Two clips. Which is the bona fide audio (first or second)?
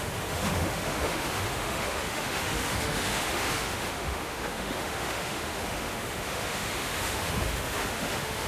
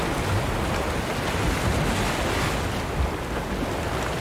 second